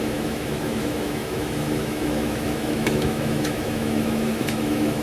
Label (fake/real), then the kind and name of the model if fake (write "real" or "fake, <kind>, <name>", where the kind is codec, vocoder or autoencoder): fake, autoencoder, DAC-VAE